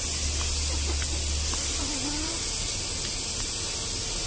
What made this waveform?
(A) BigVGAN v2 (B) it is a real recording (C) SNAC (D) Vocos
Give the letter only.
B